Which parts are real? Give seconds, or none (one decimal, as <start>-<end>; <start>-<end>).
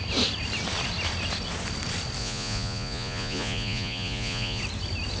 0.0-2.2; 4.6-5.2